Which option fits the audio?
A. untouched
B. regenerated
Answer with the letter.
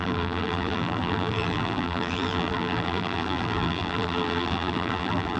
B